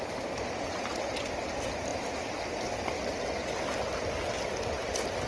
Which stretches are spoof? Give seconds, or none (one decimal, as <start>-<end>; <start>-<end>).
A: none